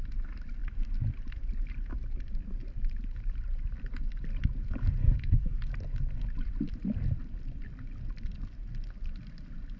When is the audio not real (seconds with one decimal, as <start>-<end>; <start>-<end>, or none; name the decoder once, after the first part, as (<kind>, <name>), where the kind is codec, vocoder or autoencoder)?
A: 5.0-5.6 (codec, DAC)